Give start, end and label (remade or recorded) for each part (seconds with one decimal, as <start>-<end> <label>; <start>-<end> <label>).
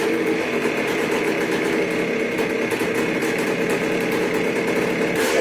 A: 0.0-0.6 recorded; 0.6-1.8 remade; 1.8-3.2 recorded; 3.2-4.4 remade; 4.4-5.4 recorded